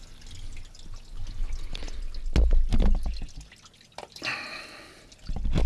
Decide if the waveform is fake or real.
real